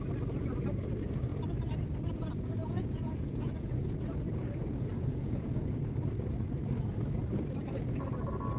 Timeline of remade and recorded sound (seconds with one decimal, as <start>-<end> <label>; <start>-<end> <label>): 0.0-2.6 recorded; 2.6-3.7 remade; 3.7-5.1 recorded; 5.1-5.8 remade; 5.8-8.6 recorded